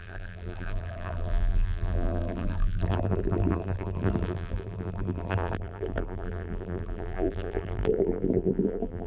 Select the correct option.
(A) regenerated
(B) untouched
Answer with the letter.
A